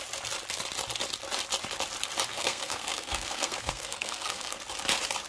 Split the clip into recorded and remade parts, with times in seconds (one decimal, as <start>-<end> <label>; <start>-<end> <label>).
0.0-2.3 recorded; 2.3-4.6 remade; 4.6-5.3 recorded